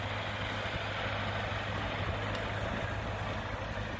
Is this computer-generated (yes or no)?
no